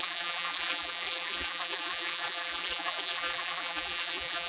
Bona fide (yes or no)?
no